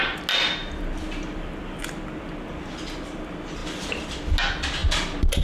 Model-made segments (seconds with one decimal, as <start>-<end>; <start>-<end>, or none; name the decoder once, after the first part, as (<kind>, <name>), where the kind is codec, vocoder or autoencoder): none